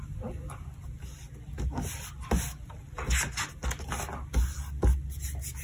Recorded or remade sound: recorded